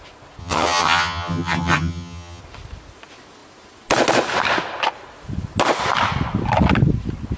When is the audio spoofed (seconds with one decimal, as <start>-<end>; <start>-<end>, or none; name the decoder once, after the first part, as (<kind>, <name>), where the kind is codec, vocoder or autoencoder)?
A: 0.4-2.4 (vocoder, HiFi-GAN)

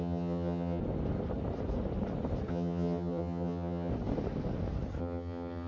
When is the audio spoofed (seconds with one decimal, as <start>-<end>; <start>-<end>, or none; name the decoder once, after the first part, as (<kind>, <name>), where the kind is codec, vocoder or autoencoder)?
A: 0.0-0.8 (vocoder, HiFi-GAN); 2.5-3.9; 5.0-5.7

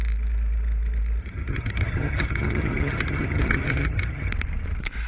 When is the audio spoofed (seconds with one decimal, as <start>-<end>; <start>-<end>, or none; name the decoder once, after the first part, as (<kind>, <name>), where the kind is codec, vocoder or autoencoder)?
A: 1.2-4.3 (vocoder, HiFi-GAN)

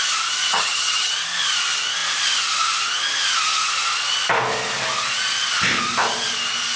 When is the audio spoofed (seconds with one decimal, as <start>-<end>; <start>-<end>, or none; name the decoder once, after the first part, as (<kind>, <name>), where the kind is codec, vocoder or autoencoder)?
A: 0.5-1.1 (vocoder, HiFi-GAN)

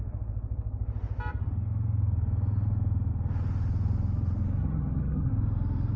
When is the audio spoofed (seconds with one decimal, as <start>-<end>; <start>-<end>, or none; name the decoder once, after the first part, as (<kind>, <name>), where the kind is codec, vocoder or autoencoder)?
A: 4.6-5.3 (vocoder, HiFi-GAN)